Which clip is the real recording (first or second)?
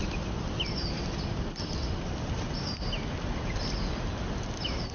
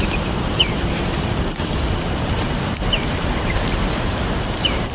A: first